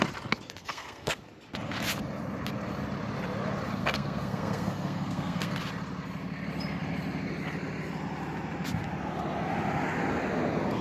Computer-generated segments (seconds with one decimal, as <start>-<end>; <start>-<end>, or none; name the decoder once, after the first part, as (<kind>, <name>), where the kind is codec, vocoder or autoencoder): 0.6-1.2 (codec, SNAC); 3.8-5.6